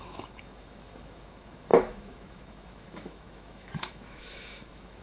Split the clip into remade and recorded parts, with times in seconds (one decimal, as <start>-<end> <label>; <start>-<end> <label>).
0.0-5.0 remade